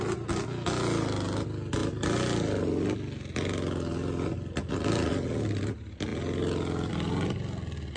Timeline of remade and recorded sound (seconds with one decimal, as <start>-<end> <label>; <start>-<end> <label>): 0.0-8.0 recorded